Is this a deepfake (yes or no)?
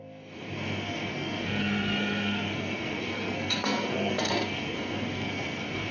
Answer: yes